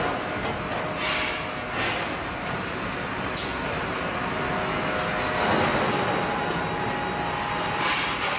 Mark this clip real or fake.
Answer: real